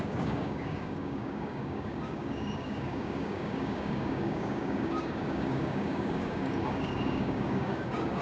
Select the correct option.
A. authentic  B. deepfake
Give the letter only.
B